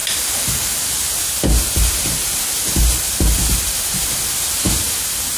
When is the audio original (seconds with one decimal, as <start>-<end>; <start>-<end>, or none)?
0.0-5.4